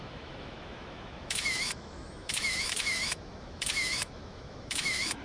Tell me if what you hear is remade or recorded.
remade